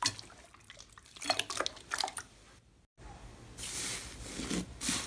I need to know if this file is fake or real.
real